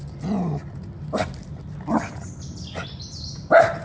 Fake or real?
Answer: real